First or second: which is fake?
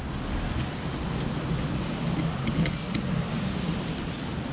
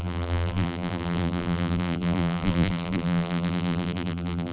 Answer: second